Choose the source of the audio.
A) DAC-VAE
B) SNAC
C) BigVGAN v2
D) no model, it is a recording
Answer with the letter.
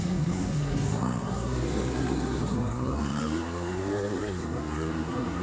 B